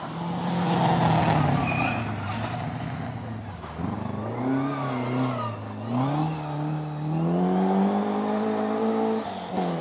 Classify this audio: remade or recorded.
recorded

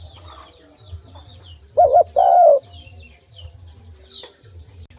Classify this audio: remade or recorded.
recorded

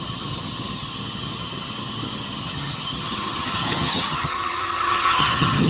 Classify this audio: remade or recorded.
remade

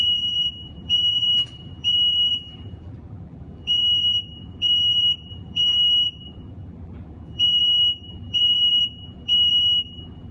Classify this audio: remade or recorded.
remade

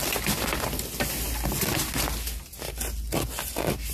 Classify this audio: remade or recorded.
recorded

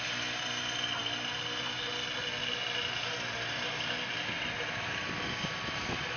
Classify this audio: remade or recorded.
recorded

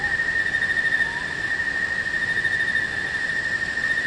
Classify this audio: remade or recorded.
recorded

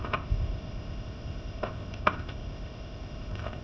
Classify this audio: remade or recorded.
remade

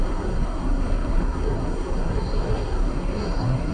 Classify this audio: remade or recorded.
remade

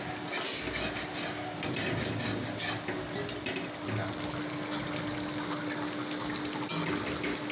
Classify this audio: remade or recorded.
recorded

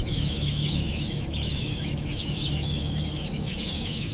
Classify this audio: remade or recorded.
remade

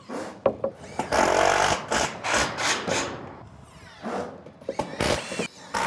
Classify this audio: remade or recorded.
recorded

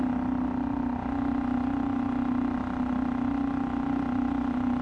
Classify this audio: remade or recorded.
recorded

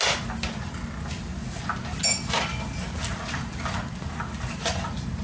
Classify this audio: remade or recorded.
recorded